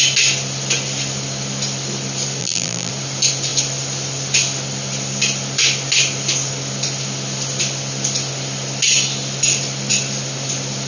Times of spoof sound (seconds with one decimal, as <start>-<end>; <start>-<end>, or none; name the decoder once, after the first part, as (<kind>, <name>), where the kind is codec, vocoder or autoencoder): 2.4-2.9 (vocoder, BigVGAN v2)